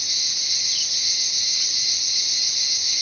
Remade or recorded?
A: recorded